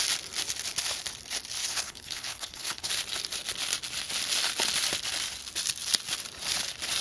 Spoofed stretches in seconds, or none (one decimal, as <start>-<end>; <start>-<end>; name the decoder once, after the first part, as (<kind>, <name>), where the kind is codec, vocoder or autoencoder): 1.6-2.9 (codec, HILCodec)